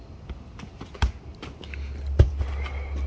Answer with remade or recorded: recorded